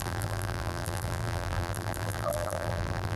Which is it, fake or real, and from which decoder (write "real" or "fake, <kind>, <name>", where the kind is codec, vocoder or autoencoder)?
fake, vocoder, BigVGAN v2